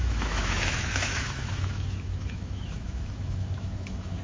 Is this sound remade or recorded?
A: remade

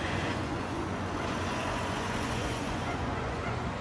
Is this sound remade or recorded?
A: remade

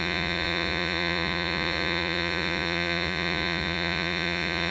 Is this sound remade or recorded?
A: remade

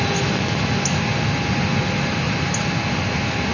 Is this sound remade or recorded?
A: recorded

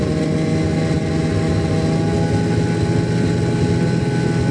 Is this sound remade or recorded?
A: recorded